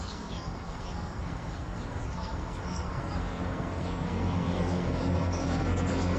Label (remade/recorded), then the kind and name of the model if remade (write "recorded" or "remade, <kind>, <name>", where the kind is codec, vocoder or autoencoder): remade, codec, SNAC